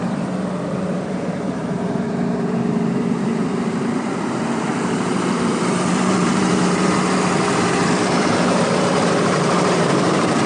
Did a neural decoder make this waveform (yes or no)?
yes